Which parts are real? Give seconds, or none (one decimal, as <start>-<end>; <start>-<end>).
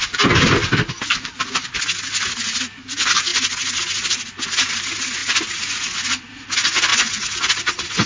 0.0-6.9